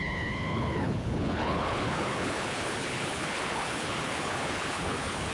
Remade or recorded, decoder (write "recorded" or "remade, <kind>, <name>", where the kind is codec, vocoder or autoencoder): remade, codec, HILCodec